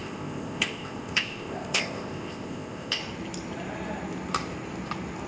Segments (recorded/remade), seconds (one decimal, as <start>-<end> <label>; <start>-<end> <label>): 0.0-3.0 remade; 3.0-5.3 recorded